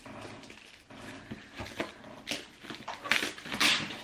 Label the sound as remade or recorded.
recorded